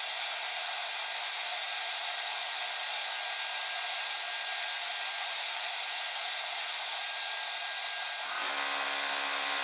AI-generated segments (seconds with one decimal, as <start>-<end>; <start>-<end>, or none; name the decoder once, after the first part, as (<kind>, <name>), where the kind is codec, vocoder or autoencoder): none